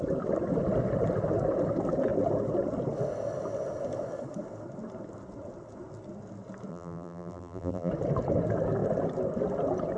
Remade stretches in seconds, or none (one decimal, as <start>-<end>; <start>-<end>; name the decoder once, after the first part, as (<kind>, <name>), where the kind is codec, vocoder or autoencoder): 6.7-7.9 (vocoder, BigVGAN v2)

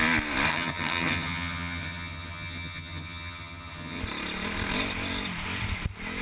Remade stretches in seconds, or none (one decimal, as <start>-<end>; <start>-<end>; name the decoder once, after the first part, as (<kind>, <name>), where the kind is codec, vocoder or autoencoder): 0.5-4.0 (vocoder, HiFi-GAN)

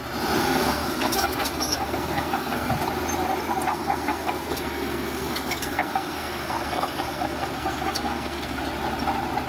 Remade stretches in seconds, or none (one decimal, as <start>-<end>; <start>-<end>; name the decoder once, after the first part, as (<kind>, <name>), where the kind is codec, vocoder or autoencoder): 0.4-2.7 (codec, SNAC); 3.7-8.6